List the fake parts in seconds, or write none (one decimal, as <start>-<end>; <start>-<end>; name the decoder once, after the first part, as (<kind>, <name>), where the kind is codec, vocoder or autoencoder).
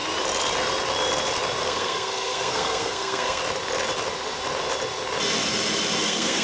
1.6-3.4 (codec, SNAC); 6.0-6.4